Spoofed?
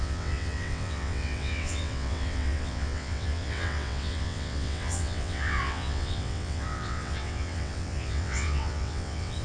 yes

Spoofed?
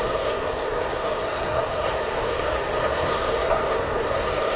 yes